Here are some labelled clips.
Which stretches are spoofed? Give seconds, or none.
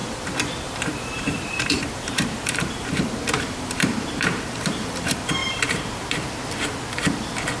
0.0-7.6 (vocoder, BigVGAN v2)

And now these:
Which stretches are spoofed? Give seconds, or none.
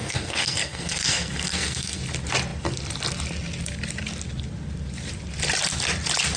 0.0-2.0 (codec, SNAC)